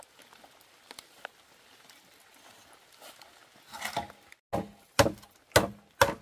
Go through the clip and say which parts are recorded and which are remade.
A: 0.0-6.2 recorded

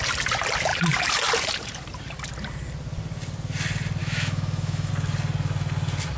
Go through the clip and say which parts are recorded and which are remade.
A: 0.0-4.0 recorded; 4.0-4.9 remade; 4.9-6.2 recorded

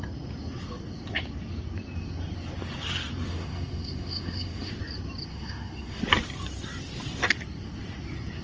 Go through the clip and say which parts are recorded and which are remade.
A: 0.0-3.3 recorded; 3.3-4.7 remade; 4.7-5.3 recorded; 5.3-6.0 remade; 6.0-8.4 recorded

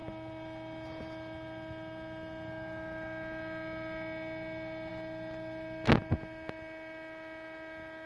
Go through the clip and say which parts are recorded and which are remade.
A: 0.0-8.1 recorded

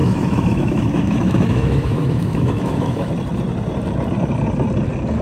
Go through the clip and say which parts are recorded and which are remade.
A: 0.0-3.1 remade; 3.1-5.2 recorded

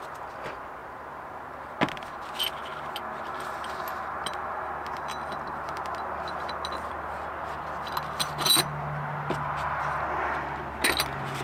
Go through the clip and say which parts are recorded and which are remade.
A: 0.0-11.4 recorded

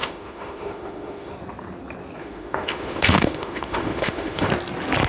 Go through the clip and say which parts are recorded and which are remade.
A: 0.0-1.3 remade; 1.3-2.2 recorded; 2.2-4.5 remade; 4.5-5.1 recorded